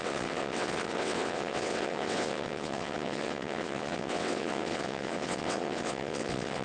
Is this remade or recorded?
remade